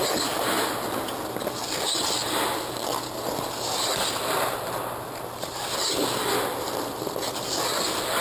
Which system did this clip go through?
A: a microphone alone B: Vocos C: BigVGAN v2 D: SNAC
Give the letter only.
A